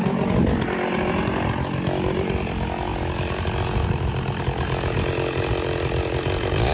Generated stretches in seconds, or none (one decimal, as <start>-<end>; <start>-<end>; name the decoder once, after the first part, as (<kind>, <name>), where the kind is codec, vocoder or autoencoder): none